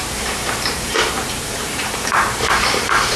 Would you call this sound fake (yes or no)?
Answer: yes